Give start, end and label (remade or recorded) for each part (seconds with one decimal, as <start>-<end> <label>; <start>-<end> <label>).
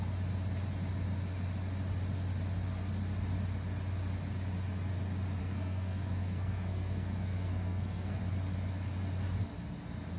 0.0-5.4 recorded; 5.4-8.2 remade; 8.2-10.2 recorded